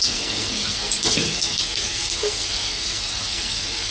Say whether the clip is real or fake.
fake